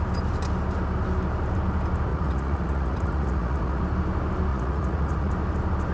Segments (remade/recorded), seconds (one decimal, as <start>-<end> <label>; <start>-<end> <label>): 0.0-2.1 recorded; 2.1-3.8 remade; 3.8-4.5 recorded; 4.5-5.3 remade; 5.3-5.9 recorded